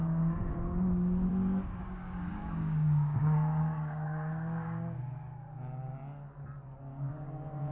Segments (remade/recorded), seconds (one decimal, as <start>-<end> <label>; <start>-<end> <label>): 0.0-0.5 remade; 0.5-1.3 recorded; 1.3-5.9 remade; 5.9-7.1 recorded; 7.1-7.7 remade